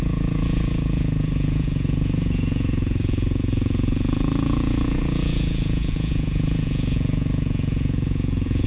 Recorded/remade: remade